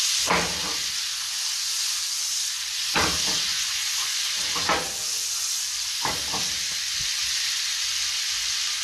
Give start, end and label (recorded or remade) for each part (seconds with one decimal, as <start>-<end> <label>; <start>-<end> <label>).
0.0-3.5 recorded; 3.5-4.2 remade; 4.2-8.8 recorded